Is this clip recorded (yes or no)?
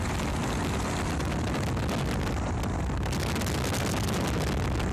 yes